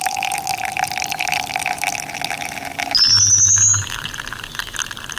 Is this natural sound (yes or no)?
yes